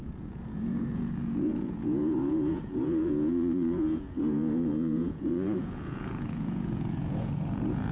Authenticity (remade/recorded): remade